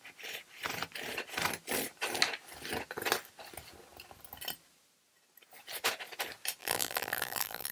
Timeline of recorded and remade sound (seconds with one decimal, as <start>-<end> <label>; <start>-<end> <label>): 0.0-6.6 recorded; 6.6-7.7 remade